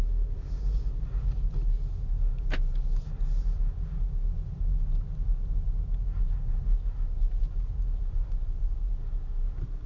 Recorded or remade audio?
recorded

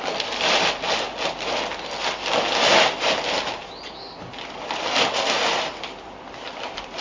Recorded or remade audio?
recorded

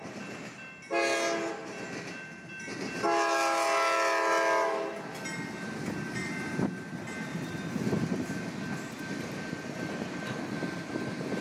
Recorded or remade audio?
recorded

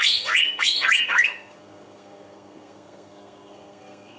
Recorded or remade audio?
remade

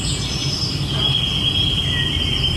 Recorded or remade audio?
recorded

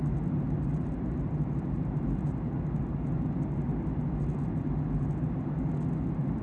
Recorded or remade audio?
recorded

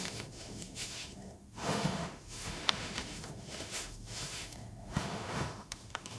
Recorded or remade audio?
remade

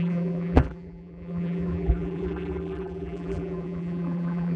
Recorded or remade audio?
remade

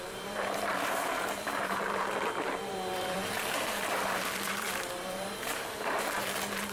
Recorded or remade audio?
remade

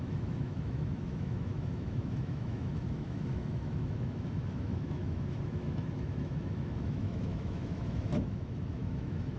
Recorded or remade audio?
remade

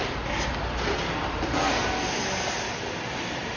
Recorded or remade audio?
recorded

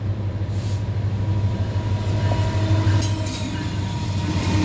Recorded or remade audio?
recorded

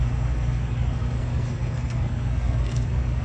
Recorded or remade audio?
remade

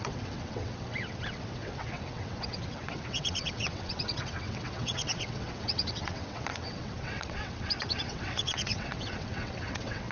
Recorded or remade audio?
remade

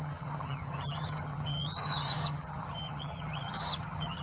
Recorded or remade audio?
remade